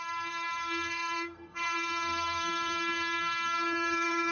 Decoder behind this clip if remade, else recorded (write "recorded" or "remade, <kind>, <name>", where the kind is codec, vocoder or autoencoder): remade, codec, SNAC